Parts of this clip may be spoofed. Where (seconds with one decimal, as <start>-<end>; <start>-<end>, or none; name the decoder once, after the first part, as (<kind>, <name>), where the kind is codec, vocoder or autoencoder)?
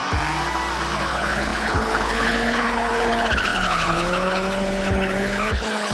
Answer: 1.0-5.9 (codec, HILCodec)